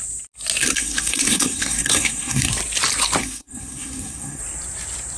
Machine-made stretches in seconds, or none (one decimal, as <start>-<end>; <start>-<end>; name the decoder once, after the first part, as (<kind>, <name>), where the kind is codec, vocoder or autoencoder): 0.6-2.5 (codec, SNAC); 3.2-4.4